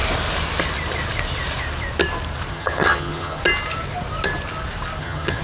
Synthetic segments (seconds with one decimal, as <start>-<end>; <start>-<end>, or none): 2.5-3.4; 5.0-5.4